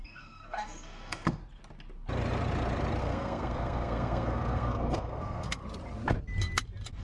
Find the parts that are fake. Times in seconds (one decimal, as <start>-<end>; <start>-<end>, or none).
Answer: 0.0-1.4; 3.0-5.6